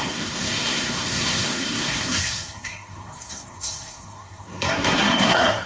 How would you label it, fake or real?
fake